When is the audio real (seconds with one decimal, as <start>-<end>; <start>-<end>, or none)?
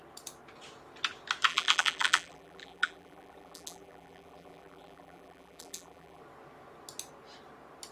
0.0-1.5; 6.2-7.9